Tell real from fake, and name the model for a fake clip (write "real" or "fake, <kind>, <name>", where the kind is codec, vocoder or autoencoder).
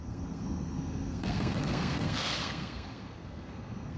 fake, codec, SNAC